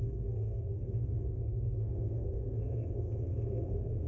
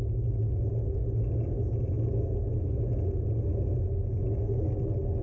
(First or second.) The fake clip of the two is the first